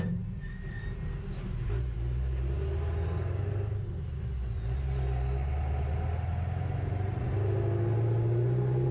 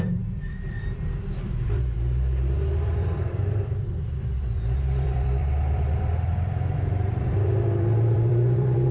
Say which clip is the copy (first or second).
second